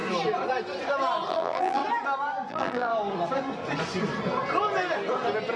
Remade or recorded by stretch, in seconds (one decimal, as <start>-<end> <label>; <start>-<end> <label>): 0.0-1.3 recorded; 1.3-1.8 remade; 1.8-2.5 recorded; 2.5-2.9 remade; 2.9-5.6 recorded